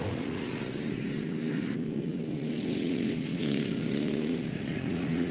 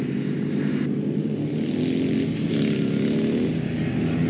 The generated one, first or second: first